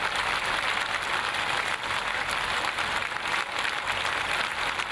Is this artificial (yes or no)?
no